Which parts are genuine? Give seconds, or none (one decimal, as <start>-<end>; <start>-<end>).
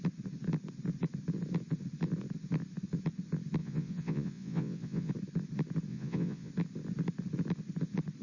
0.0-3.6; 5.1-5.9; 6.5-8.2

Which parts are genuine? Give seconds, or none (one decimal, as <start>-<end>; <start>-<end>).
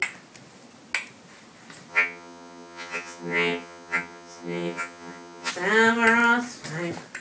0.0-1.9; 5.5-7.2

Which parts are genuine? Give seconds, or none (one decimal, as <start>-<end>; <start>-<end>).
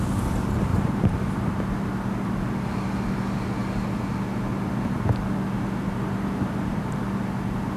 0.0-0.7; 1.6-7.8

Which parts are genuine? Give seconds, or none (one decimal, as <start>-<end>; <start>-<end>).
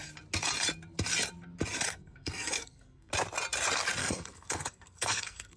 0.0-1.9; 3.1-4.0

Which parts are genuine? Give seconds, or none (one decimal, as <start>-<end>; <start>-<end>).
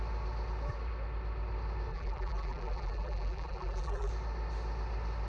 0.0-1.9; 4.1-5.3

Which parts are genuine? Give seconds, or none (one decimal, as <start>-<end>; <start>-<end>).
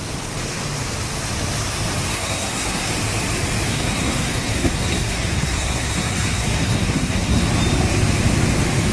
0.0-2.1; 2.9-3.7; 7.5-8.9